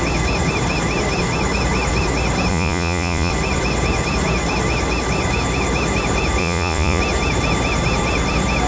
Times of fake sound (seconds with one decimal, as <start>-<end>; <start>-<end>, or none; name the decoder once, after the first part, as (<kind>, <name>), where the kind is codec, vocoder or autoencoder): 2.5-3.3 (vocoder, Vocos); 6.4-7.0